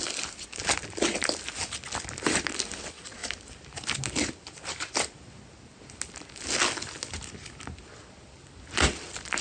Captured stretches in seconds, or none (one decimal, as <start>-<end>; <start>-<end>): 0.0-9.4